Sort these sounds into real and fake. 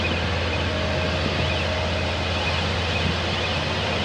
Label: real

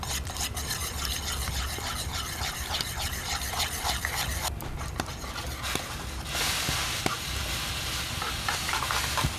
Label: real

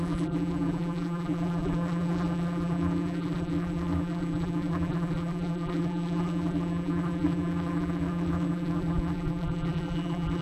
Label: fake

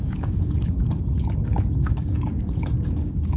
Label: fake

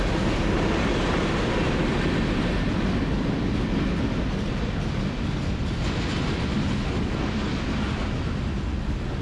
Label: real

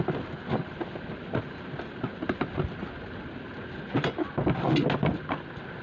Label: real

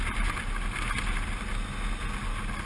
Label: real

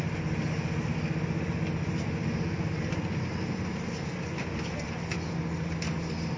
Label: real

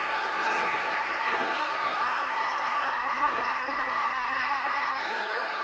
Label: fake